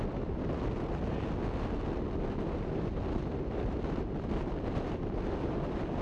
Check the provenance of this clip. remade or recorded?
recorded